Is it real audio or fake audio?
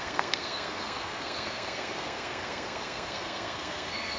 fake